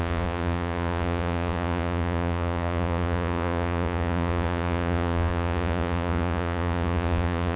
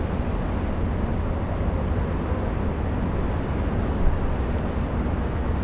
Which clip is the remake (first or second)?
first